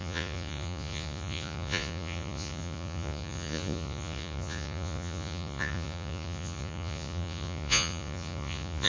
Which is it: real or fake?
fake